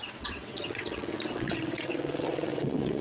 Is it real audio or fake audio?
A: fake